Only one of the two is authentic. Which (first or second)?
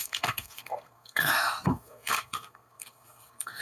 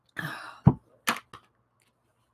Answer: second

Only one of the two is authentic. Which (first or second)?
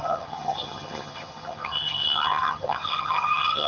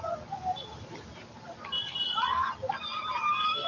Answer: second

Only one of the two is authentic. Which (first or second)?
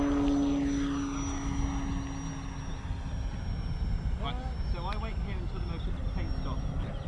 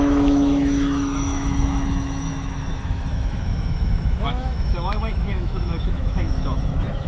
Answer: first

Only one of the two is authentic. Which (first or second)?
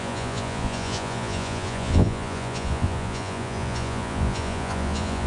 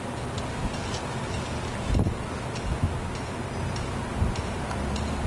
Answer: second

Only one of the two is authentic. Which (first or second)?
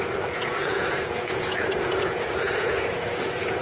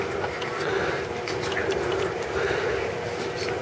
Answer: second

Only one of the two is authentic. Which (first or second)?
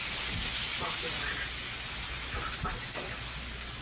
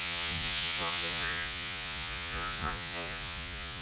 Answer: first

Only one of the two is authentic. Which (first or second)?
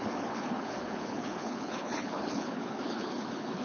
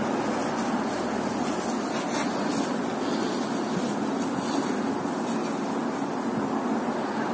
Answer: second